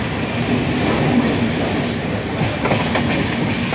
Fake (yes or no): no